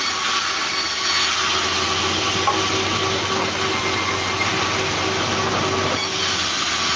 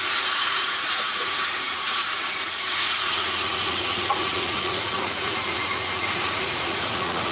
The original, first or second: first